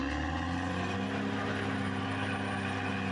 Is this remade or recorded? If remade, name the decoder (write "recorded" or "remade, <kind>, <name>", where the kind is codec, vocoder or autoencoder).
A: recorded